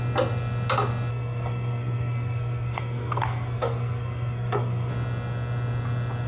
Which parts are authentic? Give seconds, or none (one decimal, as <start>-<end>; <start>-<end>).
0.0-1.1; 4.9-6.3